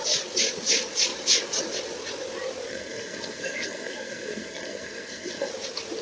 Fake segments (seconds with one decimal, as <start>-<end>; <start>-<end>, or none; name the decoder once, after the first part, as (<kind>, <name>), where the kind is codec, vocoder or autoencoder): 2.7-5.5 (codec, SNAC)